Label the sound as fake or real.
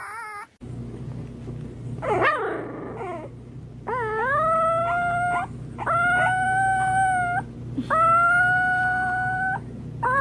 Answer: real